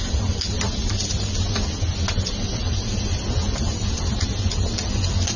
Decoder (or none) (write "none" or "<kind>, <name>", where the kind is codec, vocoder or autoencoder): none